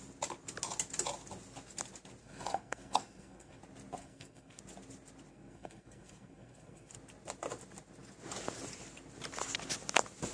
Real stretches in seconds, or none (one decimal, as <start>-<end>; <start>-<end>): 0.0-2.2; 3.6-4.0; 4.6-5.3; 6.9-10.3